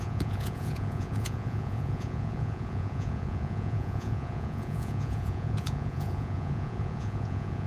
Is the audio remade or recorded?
remade